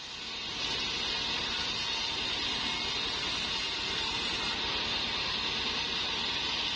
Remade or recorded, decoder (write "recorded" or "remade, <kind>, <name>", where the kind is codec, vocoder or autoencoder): recorded